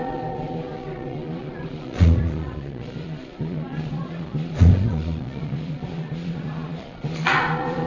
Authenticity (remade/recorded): remade